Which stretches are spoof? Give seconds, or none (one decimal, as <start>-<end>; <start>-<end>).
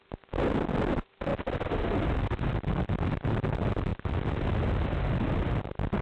none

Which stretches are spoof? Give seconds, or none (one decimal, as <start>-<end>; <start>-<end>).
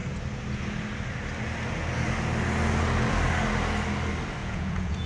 4.4-5.1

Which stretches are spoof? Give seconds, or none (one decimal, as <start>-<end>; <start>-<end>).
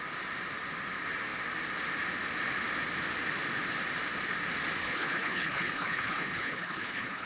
4.8-7.3